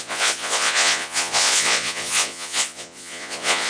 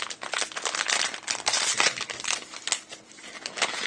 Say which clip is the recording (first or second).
second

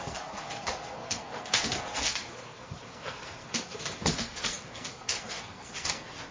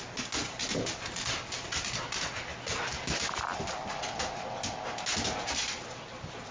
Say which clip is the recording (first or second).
second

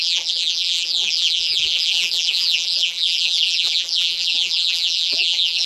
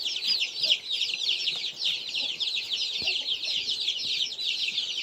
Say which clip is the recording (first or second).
second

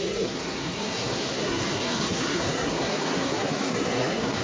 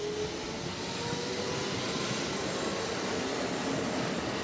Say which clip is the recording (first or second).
second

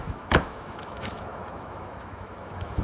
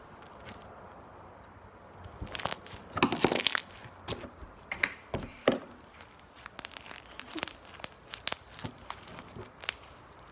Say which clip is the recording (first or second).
second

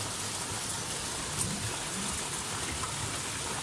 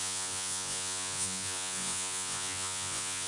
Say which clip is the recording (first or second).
first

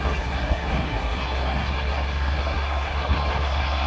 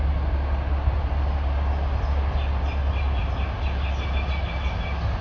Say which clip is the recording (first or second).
second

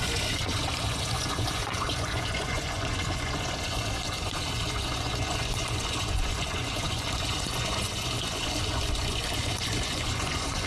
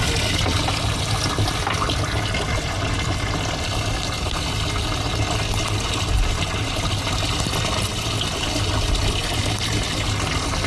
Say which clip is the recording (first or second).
second